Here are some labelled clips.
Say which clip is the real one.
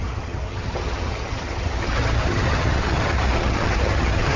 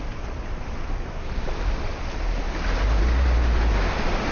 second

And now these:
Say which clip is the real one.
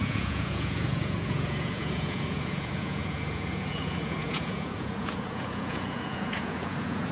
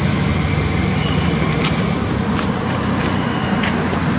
second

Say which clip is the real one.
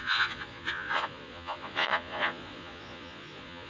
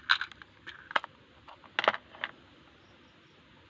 second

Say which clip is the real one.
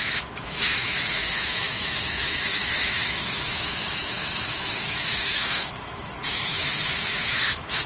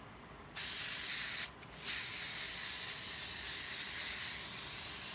second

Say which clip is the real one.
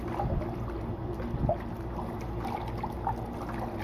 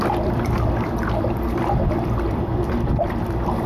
first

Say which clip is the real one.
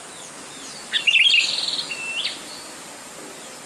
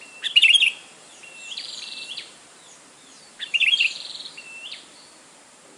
first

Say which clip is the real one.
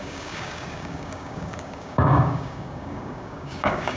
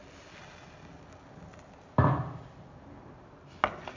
second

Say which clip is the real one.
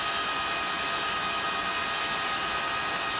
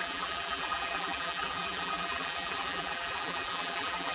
first